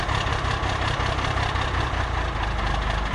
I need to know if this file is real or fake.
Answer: real